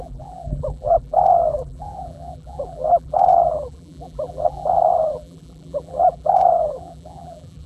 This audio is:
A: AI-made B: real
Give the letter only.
A